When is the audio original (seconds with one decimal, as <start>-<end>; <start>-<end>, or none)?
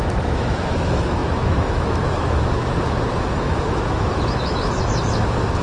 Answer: none